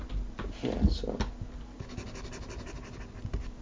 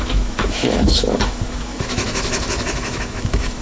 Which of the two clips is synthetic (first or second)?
second